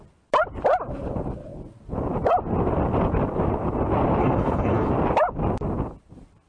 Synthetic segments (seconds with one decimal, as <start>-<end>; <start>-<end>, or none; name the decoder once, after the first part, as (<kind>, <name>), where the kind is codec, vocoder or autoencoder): 4.2-4.9 (codec, HILCodec)